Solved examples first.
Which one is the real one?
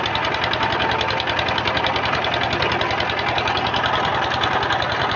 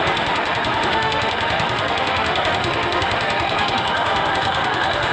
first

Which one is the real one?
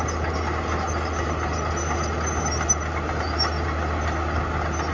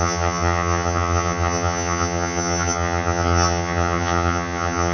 first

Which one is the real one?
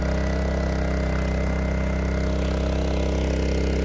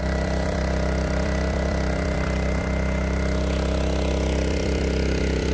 first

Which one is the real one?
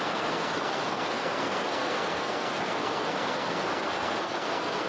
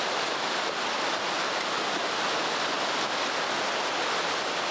second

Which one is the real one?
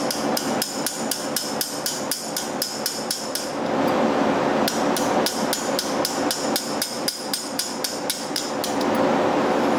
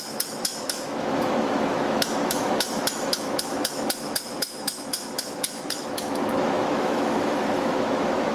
first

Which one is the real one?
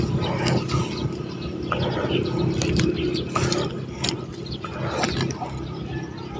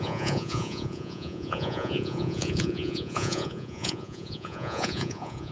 first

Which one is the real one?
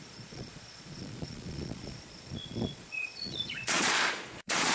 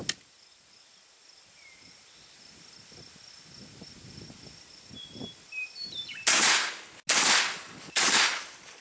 second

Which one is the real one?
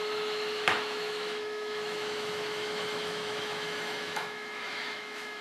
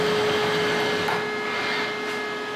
second